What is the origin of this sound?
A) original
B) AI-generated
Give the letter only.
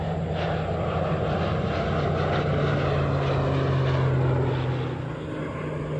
A